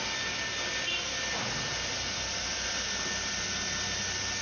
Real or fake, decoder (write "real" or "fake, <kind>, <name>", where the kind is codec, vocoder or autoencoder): real